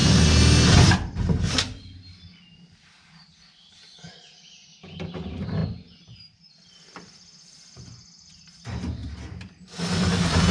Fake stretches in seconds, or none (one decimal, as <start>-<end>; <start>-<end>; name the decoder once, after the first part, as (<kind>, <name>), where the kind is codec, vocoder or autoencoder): none